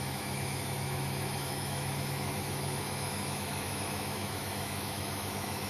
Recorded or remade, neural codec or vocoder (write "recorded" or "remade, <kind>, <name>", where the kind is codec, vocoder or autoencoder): remade, autoencoder, DAC-VAE